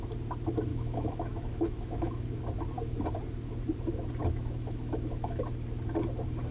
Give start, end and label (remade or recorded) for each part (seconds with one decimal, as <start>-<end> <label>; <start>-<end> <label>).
0.0-0.7 recorded; 0.7-2.4 remade; 2.4-4.2 recorded; 4.2-5.4 remade; 5.4-6.5 recorded